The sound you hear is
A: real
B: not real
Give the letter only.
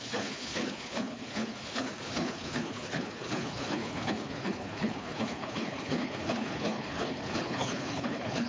B